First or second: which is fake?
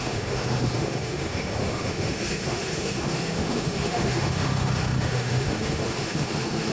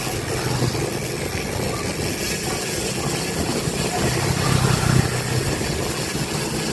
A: first